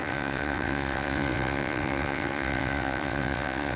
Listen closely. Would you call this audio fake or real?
fake